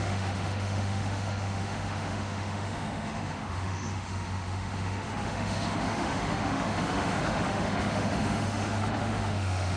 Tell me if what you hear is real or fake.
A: fake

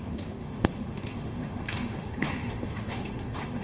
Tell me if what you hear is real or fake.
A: fake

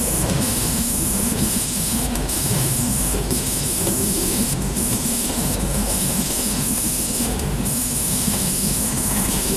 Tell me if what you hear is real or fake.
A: fake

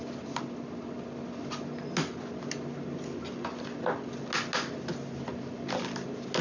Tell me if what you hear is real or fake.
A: real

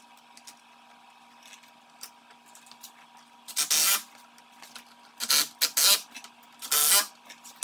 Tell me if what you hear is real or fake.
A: real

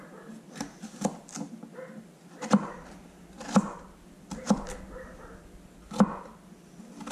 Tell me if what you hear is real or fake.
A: real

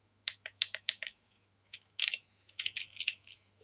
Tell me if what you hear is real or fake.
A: fake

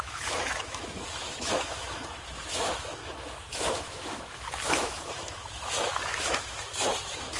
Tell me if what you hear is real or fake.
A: fake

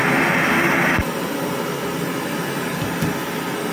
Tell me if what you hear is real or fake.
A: real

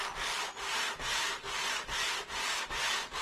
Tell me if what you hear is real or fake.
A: real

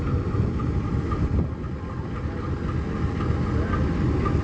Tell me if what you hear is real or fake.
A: real